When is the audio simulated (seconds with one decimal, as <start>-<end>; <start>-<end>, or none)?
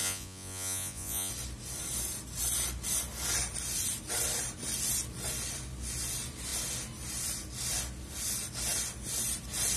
0.0-1.3